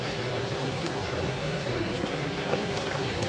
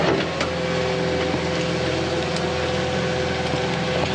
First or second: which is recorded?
second